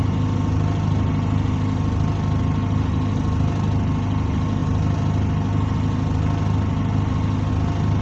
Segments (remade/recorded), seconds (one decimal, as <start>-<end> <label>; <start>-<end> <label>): 0.0-8.0 recorded